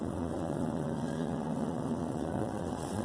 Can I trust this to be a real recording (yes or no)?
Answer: no